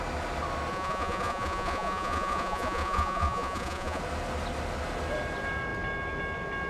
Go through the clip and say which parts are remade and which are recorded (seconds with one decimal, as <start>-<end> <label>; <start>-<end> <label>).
0.0-0.7 recorded; 0.7-4.0 remade; 4.0-6.7 recorded